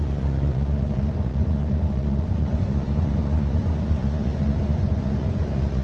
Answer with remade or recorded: remade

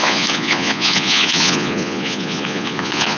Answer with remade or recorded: remade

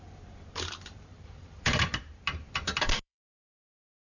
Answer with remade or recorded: remade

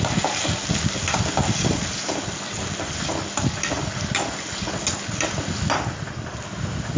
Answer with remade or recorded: recorded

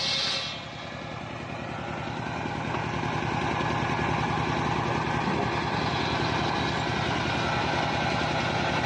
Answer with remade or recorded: recorded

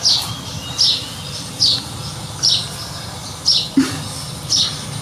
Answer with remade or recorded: recorded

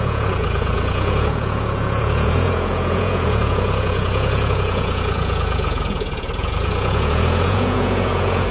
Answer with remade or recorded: remade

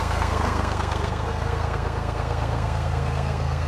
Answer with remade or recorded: remade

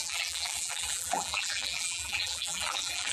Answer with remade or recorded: remade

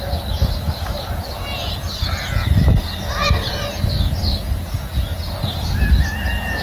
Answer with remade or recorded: recorded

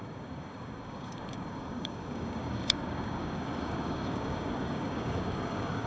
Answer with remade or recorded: remade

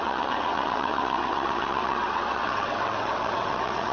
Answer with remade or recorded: remade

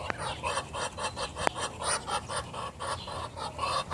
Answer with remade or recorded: recorded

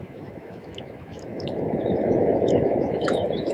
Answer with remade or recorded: remade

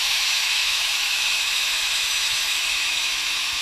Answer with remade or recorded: remade